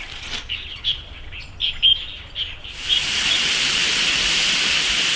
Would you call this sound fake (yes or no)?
no